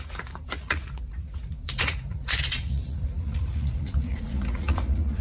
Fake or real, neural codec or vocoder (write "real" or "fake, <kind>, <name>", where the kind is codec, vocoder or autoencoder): fake, vocoder, Vocos